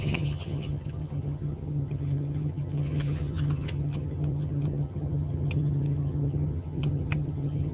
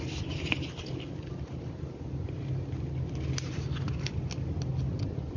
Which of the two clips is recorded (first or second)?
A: second